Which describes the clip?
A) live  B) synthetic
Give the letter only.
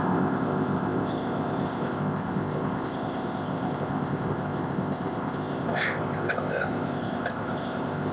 B